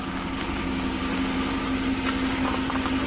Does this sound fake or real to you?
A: real